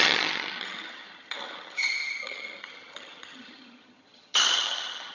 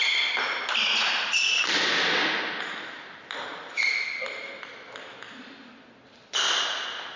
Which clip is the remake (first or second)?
first